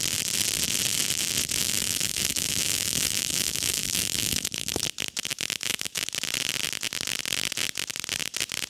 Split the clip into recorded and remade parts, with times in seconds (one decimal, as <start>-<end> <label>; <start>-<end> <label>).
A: 0.0-1.6 recorded; 1.6-4.8 remade; 4.8-5.3 recorded; 5.3-6.0 remade; 6.0-8.7 recorded